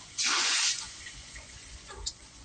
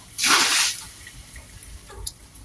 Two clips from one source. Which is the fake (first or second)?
first